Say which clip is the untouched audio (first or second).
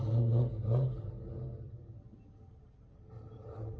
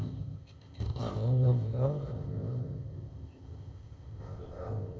first